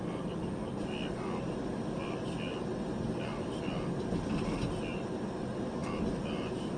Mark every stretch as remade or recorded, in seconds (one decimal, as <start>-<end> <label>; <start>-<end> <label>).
0.0-6.8 recorded